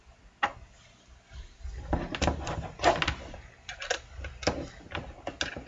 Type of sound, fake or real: real